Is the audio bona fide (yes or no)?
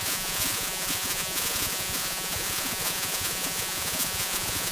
no